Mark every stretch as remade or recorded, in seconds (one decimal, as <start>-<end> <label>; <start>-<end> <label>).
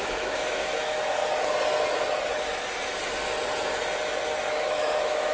0.0-1.2 remade; 1.2-4.4 recorded; 4.4-5.3 remade